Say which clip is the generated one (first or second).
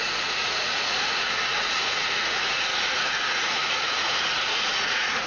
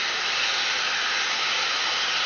first